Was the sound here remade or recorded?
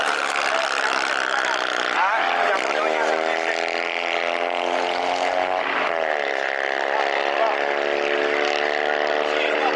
recorded